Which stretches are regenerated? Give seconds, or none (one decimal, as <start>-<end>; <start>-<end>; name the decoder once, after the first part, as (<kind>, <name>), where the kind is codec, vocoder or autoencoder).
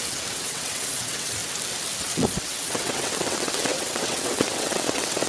0.0-1.4 (vocoder, WaveNeXt); 2.0-5.3